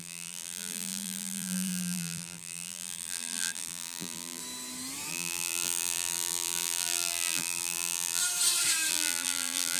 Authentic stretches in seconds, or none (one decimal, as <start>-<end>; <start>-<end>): 4.4-5.1; 8.2-8.9